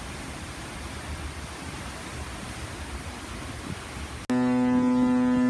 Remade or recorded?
recorded